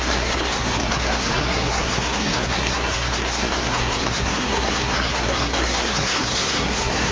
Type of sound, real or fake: fake